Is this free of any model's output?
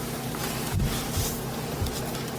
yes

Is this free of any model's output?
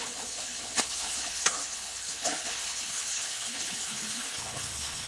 no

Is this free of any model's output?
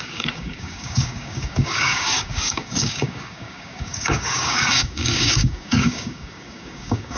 no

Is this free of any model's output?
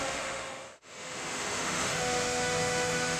no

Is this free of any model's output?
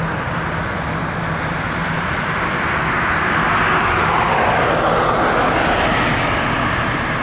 yes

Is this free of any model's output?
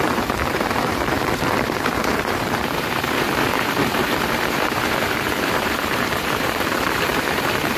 no